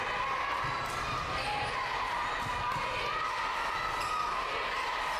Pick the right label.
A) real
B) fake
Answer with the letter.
A